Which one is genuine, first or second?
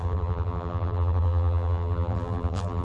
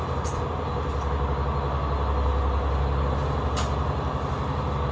second